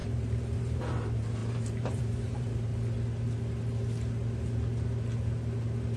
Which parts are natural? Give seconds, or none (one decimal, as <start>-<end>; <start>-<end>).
2.7-6.0